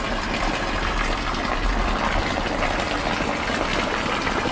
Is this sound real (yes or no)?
yes